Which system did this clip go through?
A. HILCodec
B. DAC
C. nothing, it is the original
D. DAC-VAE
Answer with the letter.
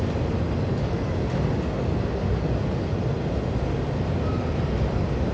C